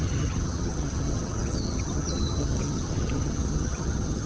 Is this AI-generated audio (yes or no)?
yes